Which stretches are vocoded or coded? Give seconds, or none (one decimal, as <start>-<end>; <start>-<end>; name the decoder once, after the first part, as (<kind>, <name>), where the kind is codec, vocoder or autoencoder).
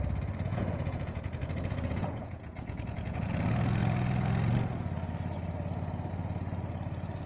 0.5-3.3 (vocoder, Vocos)